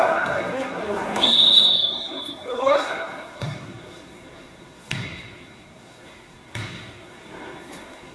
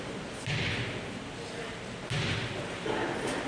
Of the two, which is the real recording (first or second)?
second